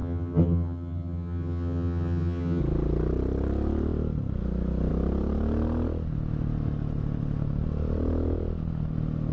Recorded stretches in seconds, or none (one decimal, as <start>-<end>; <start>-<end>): 2.6-9.3